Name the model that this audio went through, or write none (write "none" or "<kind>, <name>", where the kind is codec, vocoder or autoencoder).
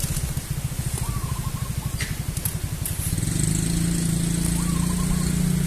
none